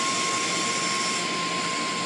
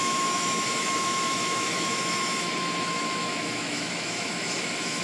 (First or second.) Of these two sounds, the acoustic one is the first